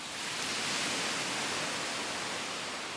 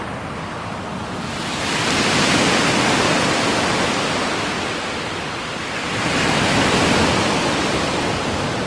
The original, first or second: first